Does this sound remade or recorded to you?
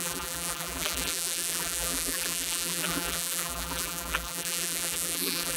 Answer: remade